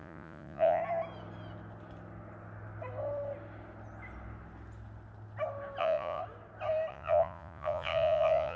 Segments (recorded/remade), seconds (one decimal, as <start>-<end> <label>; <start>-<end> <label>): 0.0-0.8 remade; 0.8-5.8 recorded; 5.8-6.2 remade; 6.2-6.9 recorded; 6.9-8.6 remade